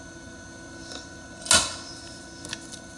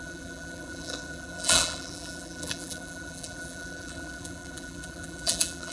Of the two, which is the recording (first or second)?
first